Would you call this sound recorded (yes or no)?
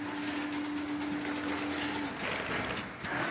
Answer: yes